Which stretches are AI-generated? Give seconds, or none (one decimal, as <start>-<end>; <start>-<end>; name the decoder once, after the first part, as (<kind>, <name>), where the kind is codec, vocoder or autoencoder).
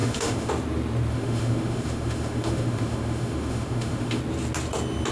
0.0-0.5 (autoencoder, DAC-VAE); 1.1-4.2